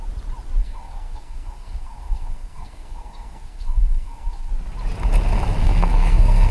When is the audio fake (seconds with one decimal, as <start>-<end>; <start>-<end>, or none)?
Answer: 0.6-4.5; 5.6-6.5